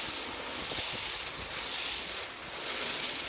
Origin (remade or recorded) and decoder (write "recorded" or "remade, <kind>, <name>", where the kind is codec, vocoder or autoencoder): recorded